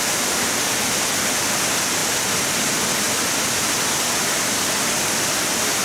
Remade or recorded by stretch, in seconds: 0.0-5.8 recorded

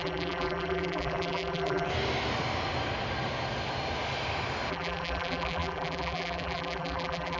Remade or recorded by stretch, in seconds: 0.0-1.9 remade; 1.9-4.7 recorded; 4.7-7.4 remade

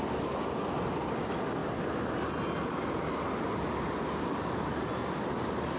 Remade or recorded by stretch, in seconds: 0.0-5.8 recorded

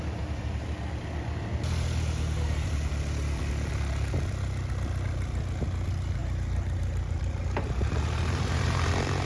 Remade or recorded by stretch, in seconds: 0.0-6.2 recorded; 6.2-8.9 remade; 8.9-9.3 recorded

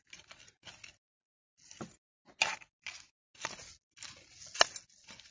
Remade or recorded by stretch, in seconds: 0.0-5.3 recorded

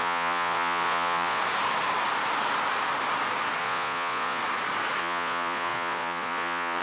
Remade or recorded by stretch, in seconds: 0.0-1.4 remade; 1.4-3.6 recorded; 3.6-4.4 remade; 4.4-5.0 recorded; 5.0-6.8 remade

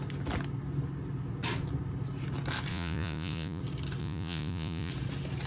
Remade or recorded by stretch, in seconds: 0.0-2.7 recorded; 2.7-3.6 remade; 3.6-4.0 recorded; 4.0-4.9 remade; 4.9-5.5 recorded